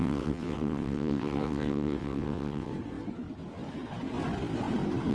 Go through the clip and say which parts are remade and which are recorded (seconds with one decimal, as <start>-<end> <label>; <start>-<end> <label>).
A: 0.0-2.7 remade; 2.7-5.1 recorded